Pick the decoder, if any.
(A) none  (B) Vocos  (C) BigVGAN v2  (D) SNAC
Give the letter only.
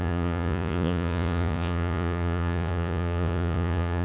B